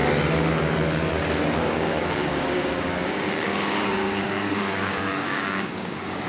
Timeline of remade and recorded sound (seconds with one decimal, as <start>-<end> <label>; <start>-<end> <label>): 0.0-1.6 recorded; 1.6-6.3 remade